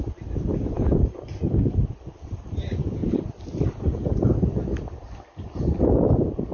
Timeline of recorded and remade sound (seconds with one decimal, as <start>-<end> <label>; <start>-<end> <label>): 0.0-6.5 recorded